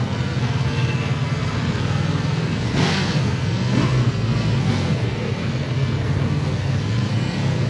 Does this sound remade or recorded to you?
remade